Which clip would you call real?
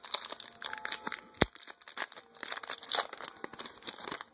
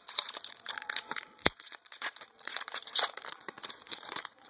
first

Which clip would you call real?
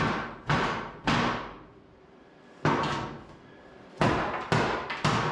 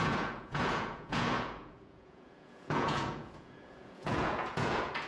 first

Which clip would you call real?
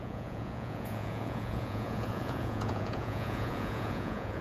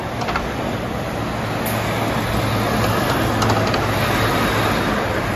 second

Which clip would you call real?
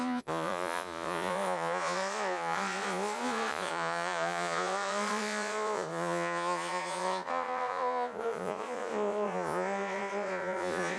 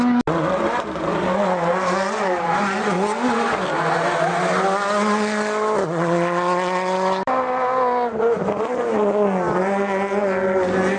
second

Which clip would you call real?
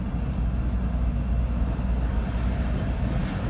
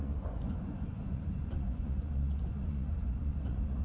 first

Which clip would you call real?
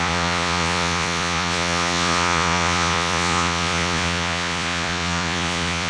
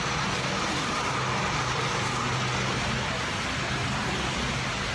second